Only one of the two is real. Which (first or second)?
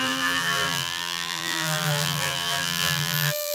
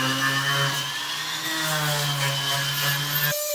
second